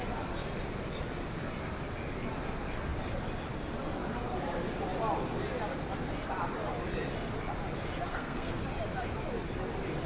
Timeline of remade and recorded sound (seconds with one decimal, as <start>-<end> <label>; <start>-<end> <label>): 0.0-8.1 recorded; 8.1-8.6 remade; 8.6-10.1 recorded